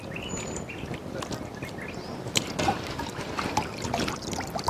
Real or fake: real